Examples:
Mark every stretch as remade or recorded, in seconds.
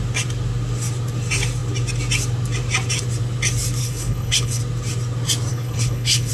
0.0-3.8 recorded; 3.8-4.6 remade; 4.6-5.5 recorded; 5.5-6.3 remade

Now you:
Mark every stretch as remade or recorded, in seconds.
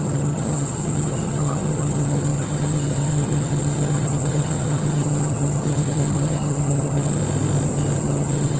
0.0-7.2 remade; 7.2-8.0 recorded; 8.0-8.6 remade